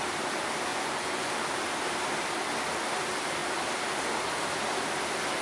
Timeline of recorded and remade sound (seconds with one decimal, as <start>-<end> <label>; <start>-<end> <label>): 0.0-0.7 recorded; 0.7-1.3 remade; 1.3-5.4 recorded